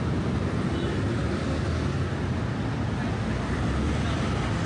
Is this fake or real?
real